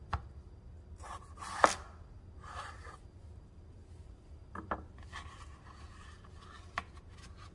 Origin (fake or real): real